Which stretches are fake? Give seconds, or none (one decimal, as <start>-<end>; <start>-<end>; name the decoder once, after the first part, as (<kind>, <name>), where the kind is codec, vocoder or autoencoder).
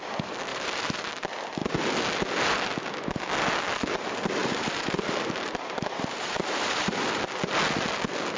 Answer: 0.5-1.1 (vocoder, BigVGAN v2); 4.4-7.2